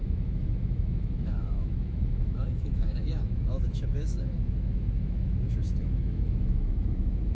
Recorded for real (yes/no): no